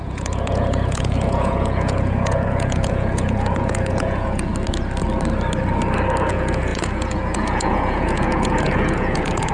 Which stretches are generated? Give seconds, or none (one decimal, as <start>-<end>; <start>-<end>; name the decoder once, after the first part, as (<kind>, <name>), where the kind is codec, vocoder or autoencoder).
0.0-4.5 (vocoder, Vocos); 6.3-9.5